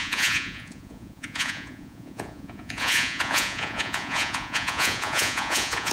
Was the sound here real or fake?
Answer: fake